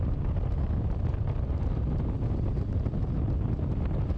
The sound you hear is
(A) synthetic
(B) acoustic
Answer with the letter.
B